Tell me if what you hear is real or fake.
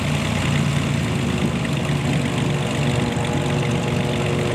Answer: real